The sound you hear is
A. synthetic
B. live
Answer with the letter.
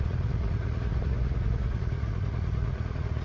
A